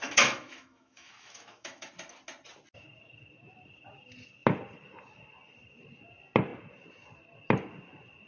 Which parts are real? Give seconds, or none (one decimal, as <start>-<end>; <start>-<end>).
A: 1.9-8.3